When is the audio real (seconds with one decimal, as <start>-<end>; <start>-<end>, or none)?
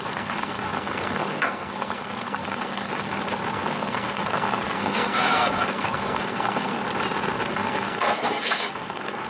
2.9-3.5; 6.8-7.5